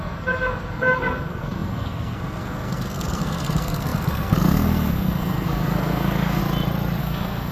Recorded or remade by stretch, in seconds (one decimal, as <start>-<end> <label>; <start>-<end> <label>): 0.0-6.4 remade; 6.4-7.0 recorded; 7.0-7.5 remade